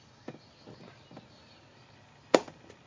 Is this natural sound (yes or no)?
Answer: yes